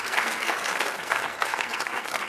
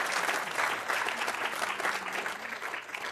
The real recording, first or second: second